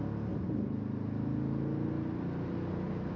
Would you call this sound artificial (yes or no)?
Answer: no